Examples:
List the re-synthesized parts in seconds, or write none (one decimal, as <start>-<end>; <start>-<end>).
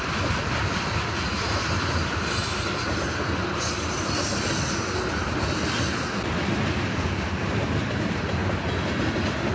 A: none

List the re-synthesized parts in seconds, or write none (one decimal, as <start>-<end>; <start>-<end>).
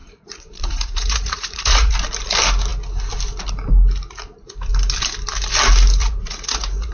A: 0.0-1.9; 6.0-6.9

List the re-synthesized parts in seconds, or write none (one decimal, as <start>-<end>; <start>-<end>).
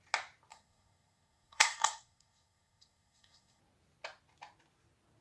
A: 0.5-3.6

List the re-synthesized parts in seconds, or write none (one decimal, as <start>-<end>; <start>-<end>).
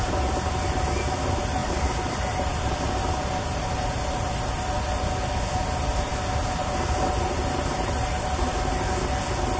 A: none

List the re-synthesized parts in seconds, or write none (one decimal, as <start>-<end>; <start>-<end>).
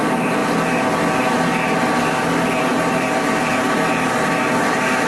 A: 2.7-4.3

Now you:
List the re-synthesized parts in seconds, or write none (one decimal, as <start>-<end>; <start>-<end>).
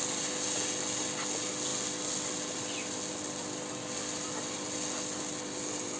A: none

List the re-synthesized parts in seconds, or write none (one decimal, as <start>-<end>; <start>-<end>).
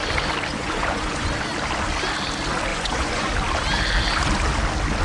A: 0.5-1.3; 2.7-3.3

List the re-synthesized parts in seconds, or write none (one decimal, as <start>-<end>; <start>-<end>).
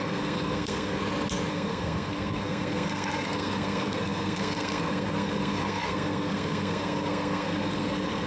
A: 0.0-1.0; 1.5-8.3